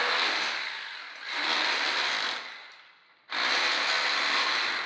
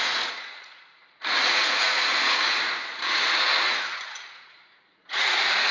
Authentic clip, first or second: first